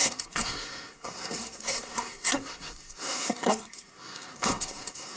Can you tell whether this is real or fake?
fake